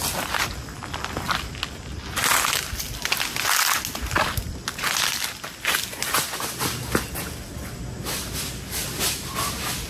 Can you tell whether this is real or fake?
real